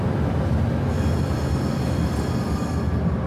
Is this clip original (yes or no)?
yes